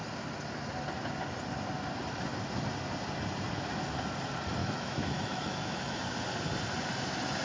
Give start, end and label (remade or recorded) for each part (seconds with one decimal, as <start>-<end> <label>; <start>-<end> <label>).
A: 0.0-4.6 recorded; 4.6-6.0 remade; 6.0-7.4 recorded